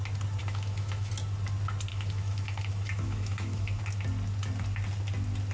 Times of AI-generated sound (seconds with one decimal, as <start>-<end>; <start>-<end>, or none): 0.4-1.1; 1.9-3.8